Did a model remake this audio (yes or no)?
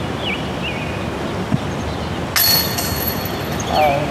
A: no